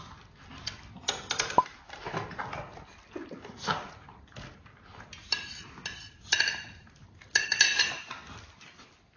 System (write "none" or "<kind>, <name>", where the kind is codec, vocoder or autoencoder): none